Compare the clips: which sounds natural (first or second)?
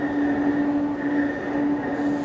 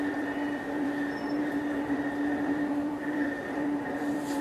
first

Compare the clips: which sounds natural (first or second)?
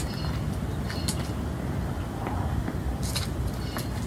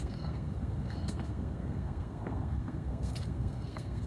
first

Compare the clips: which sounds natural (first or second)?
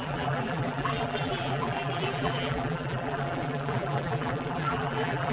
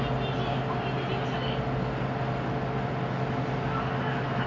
second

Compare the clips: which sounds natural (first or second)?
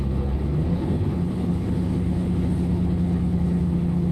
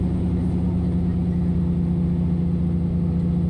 second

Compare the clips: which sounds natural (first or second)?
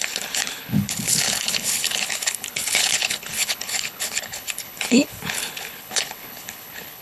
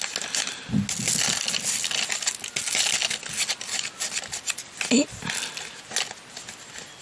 second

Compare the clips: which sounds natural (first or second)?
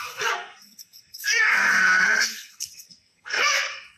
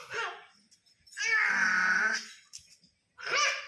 second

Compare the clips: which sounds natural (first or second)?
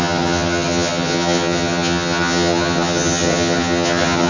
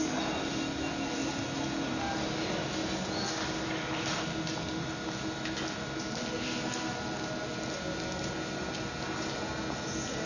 second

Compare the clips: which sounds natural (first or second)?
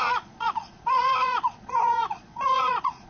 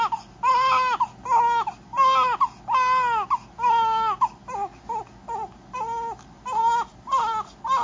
second